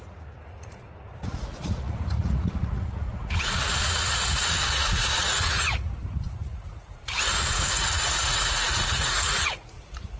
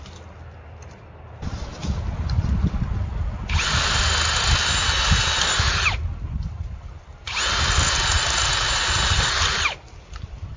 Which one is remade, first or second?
first